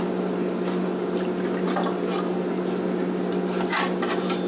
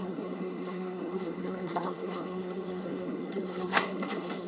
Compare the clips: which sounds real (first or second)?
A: first